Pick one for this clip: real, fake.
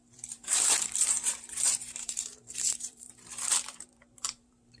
fake